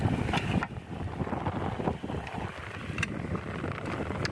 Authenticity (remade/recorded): recorded